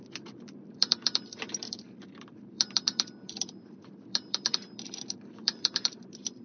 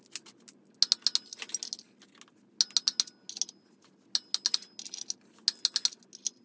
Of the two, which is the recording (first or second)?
second